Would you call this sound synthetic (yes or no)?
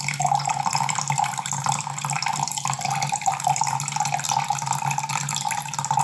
no